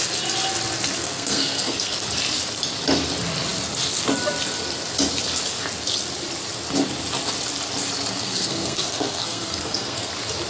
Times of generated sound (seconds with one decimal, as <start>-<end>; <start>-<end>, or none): 1.0-2.0; 8.1-10.1